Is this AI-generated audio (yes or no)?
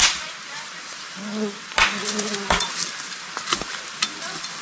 yes